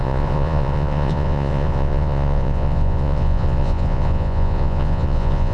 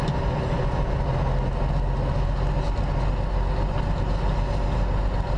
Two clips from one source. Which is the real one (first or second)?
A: second